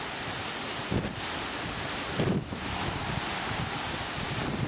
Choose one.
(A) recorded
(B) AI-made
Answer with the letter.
A